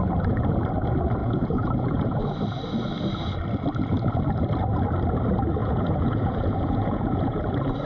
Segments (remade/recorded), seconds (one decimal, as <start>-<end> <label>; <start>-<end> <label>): 0.0-1.2 recorded; 1.2-2.2 remade; 2.2-5.6 recorded; 5.6-7.4 remade; 7.4-7.9 recorded

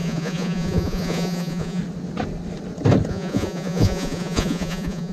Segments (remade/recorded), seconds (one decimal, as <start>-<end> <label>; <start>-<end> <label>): 0.0-1.8 remade; 1.8-3.1 recorded; 3.1-5.1 remade

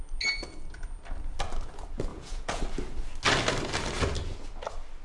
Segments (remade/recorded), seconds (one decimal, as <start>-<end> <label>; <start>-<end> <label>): 0.0-2.1 recorded; 2.1-2.6 remade; 2.6-5.0 recorded

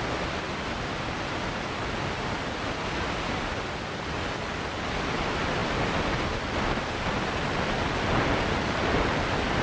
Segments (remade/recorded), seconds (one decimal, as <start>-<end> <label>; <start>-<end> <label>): 0.0-9.6 recorded

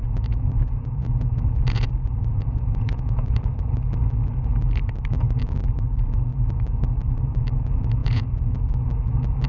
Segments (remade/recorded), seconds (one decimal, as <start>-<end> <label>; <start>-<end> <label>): 0.0-3.4 remade; 3.4-8.0 recorded; 8.0-8.6 remade; 8.6-9.5 recorded

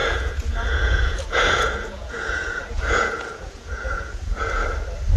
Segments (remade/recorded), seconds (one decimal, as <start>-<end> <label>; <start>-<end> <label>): 0.0-4.6 remade; 4.6-5.2 recorded